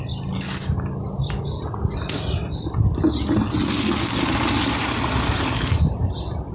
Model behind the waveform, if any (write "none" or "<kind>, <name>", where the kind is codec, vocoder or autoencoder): none